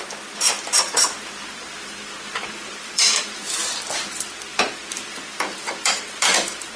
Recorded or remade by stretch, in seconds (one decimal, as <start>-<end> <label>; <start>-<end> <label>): 0.0-3.6 remade; 3.6-4.1 recorded; 4.1-6.8 remade

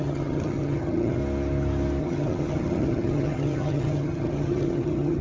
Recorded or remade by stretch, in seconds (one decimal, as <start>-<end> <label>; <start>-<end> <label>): 0.0-1.2 remade; 1.2-2.0 recorded; 2.0-5.2 remade